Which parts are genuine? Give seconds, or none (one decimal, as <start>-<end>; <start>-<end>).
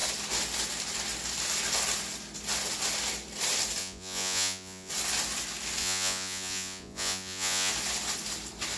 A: 0.0-3.8; 4.9-5.8; 7.7-8.8